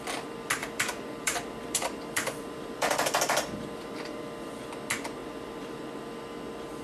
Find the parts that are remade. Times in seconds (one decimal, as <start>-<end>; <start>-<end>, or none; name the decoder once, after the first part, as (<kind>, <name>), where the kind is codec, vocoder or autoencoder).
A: 0.6-4.7 (vocoder, BigVGAN v2); 5.2-5.8